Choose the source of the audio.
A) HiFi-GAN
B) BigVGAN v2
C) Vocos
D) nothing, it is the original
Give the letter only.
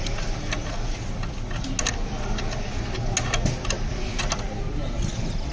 D